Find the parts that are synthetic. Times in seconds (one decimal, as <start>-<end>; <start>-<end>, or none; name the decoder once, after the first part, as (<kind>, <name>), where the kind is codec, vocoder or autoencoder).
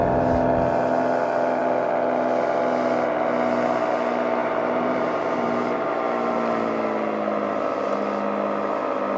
4.4-5.9 (vocoder, BigVGAN v2)